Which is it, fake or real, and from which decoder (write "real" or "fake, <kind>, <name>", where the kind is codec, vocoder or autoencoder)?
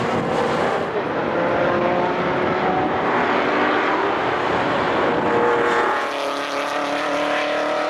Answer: real